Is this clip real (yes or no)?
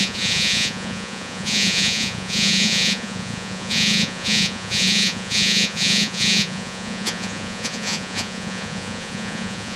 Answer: no